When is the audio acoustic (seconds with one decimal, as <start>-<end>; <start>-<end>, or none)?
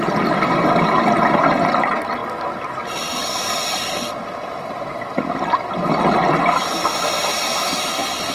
0.0-8.3